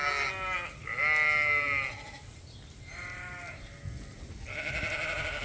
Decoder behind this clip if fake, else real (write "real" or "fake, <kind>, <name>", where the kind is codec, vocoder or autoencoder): real